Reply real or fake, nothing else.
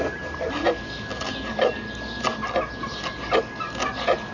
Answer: real